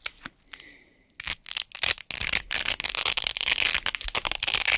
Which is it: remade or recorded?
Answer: recorded